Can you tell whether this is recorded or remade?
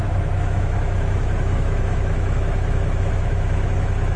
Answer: remade